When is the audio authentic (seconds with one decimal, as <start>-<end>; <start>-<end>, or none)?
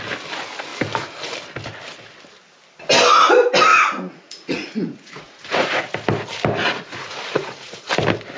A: 0.0-3.7; 5.8-6.6; 7.9-8.4